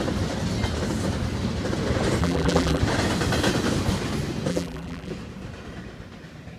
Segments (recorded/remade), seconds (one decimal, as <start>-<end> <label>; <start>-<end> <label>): 0.0-2.2 recorded; 2.2-2.8 remade; 2.8-4.5 recorded; 4.5-5.1 remade; 5.1-6.6 recorded

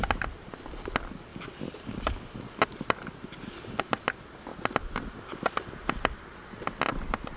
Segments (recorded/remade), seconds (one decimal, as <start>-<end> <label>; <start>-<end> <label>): 0.0-4.5 recorded; 4.5-5.7 remade; 5.7-7.4 recorded